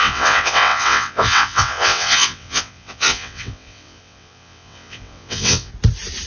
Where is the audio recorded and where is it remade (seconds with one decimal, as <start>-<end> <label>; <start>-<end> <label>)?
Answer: 0.0-5.7 remade; 5.7-6.3 recorded